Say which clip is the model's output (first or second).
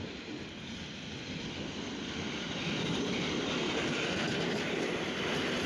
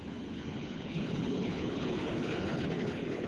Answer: second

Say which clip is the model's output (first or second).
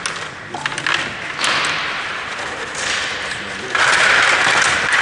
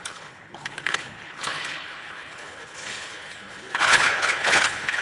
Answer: second